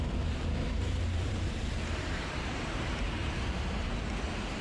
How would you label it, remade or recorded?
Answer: remade